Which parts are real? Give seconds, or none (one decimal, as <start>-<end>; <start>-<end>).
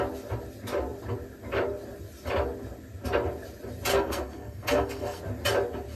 0.0-3.9; 5.2-6.0